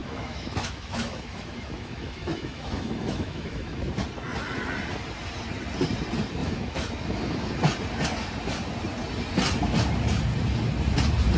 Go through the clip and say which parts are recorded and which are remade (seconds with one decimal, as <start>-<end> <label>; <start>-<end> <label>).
0.0-3.9 remade; 3.9-6.4 recorded; 6.4-7.5 remade; 7.5-11.4 recorded